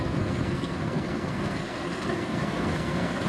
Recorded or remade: remade